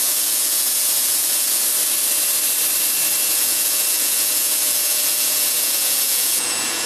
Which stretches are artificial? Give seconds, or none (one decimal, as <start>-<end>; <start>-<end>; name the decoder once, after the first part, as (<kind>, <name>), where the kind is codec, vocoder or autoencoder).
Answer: 0.0-1.6 (vocoder, Vocos); 3.3-6.9

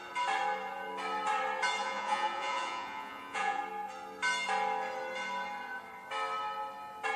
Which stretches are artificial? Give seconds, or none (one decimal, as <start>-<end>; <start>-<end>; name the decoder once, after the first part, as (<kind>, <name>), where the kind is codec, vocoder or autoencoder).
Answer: 1.8-3.6 (vocoder, Vocos)

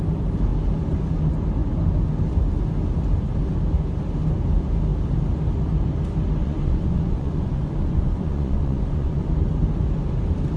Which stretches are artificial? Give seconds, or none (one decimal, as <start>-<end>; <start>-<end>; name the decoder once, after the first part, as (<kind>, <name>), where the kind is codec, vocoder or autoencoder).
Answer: 6.4-9.2 (vocoder, Vocos)

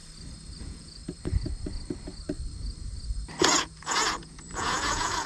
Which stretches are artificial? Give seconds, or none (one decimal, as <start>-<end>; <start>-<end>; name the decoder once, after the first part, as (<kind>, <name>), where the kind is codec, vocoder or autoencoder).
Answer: 0.6-1.0 (vocoder, Vocos); 3.4-5.3

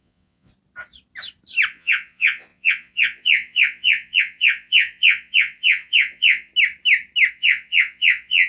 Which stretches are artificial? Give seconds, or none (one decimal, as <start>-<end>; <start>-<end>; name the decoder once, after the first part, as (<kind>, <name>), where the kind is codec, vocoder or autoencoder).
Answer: 0.0-0.5 (vocoder, Vocos); 1.7-6.5; 7.3-8.5

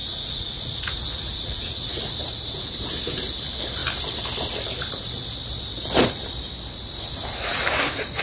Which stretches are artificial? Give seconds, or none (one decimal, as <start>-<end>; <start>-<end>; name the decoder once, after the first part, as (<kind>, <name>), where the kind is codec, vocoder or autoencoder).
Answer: 0.0-2.2 (vocoder, Vocos)

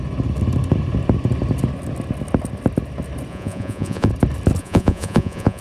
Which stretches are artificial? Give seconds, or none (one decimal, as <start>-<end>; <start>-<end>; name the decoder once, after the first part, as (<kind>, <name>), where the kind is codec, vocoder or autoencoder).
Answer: 3.3-4.1 (vocoder, Vocos); 4.6-5.6

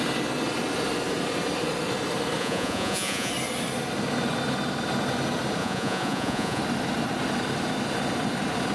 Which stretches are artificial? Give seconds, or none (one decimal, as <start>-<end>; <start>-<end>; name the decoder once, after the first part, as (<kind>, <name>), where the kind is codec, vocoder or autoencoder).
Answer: 2.4-3.3 (vocoder, Vocos); 5.6-6.6